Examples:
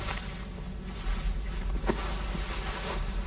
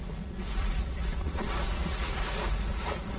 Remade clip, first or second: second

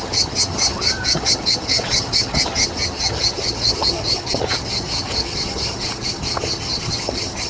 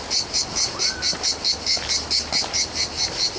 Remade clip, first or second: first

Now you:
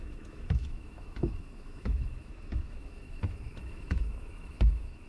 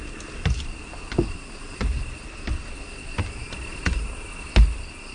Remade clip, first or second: first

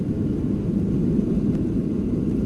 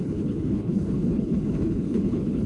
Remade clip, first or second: second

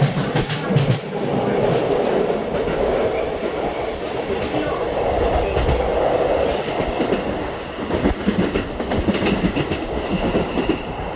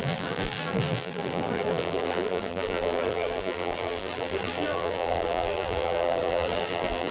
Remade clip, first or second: second